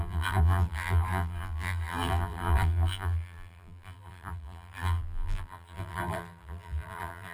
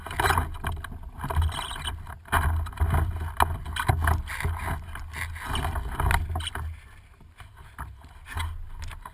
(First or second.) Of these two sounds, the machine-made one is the first